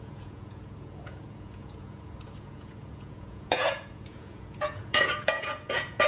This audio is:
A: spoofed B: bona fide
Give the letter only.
A